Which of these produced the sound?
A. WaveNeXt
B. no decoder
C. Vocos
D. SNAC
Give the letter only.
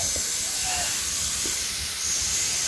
B